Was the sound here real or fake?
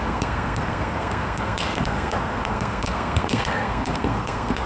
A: fake